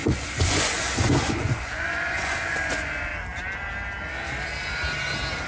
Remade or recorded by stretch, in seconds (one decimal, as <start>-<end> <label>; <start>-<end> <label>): 0.0-3.1 remade; 3.1-5.5 recorded